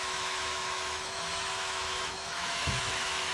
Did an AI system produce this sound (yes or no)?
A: yes